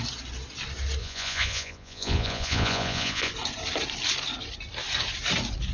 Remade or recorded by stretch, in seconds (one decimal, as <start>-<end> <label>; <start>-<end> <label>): 0.0-1.0 recorded; 1.0-3.3 remade; 3.3-5.7 recorded